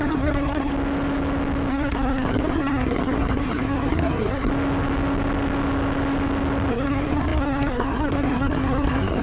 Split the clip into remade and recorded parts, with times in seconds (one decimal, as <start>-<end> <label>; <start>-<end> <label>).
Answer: 0.0-0.7 remade; 0.7-1.7 recorded; 1.7-4.5 remade; 4.5-6.7 recorded; 6.7-9.2 remade